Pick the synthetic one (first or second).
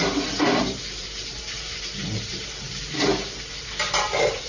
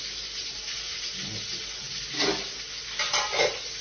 first